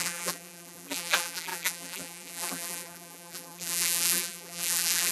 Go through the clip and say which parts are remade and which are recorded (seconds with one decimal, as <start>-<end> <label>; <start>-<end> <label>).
0.0-5.1 remade

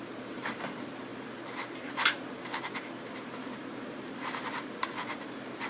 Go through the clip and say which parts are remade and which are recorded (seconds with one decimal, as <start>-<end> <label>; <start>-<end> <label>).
0.0-5.7 remade

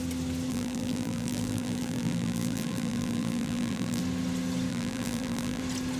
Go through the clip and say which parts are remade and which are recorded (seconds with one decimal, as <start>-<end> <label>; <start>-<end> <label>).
0.0-0.5 recorded; 0.5-4.0 remade; 4.0-4.7 recorded; 4.7-5.6 remade; 5.6-6.0 recorded

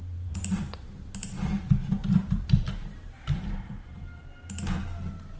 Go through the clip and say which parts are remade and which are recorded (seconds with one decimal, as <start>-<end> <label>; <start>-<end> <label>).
0.0-0.6 remade; 0.6-2.0 recorded; 2.0-4.2 remade; 4.2-5.4 recorded